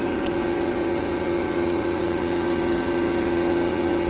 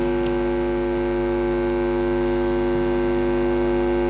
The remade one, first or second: first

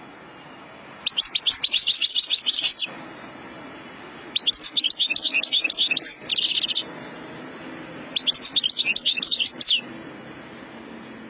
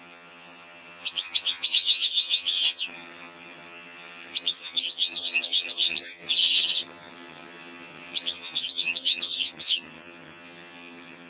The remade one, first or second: second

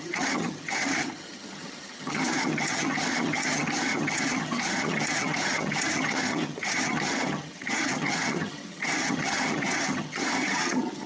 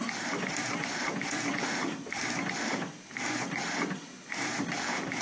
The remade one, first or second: first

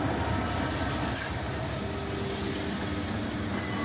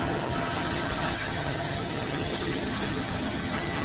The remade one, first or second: second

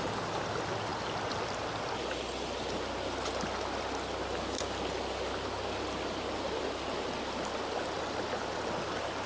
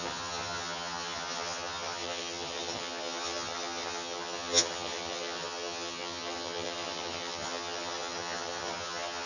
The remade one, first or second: second